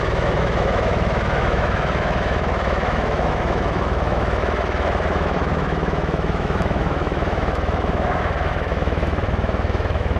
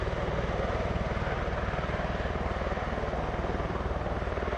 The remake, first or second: first